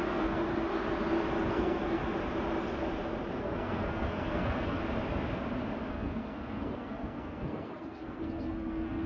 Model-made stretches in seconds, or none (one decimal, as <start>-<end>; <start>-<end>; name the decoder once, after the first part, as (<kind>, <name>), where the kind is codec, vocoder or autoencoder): 0.0-0.5 (codec, SNAC); 1.5-2.0; 3.4-4.8; 5.9-9.1